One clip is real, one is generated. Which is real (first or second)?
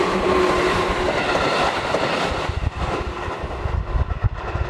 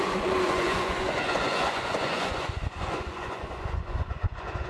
first